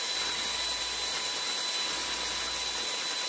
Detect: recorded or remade recorded